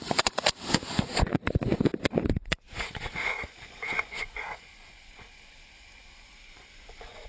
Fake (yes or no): yes